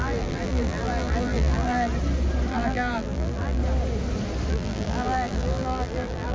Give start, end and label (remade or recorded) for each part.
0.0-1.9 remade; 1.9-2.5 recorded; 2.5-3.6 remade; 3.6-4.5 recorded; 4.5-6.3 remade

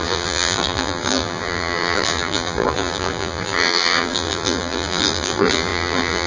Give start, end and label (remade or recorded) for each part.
0.0-6.3 remade

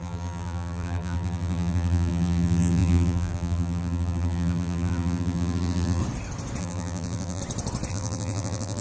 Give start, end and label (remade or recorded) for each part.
0.0-6.0 remade; 6.0-6.6 recorded; 6.6-7.4 remade; 7.4-7.9 recorded; 7.9-8.8 remade

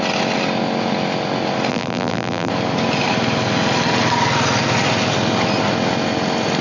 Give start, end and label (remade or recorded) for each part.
0.0-1.7 recorded; 1.7-2.5 remade; 2.5-6.6 recorded

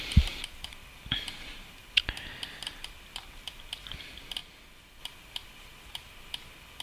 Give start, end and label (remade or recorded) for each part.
0.0-4.4 remade; 4.4-5.0 recorded; 5.0-6.8 remade

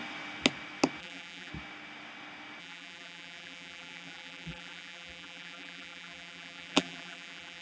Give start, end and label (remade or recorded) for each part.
0.0-1.0 recorded; 1.0-1.5 remade; 1.5-2.6 recorded; 2.6-7.6 remade